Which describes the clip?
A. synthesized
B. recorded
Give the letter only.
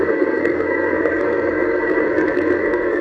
A